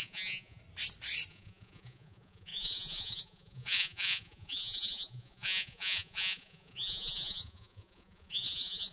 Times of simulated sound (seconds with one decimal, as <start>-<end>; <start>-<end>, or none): 0.0-0.6; 1.3-8.9